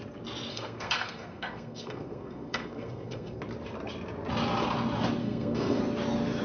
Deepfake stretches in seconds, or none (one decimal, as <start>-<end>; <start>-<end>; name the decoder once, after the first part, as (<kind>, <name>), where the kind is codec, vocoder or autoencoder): 0.5-3.4 (codec, SNAC); 5.2-5.8